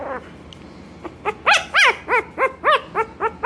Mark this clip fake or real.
real